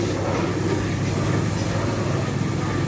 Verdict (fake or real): real